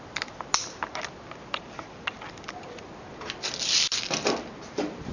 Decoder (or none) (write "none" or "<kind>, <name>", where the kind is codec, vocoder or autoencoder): none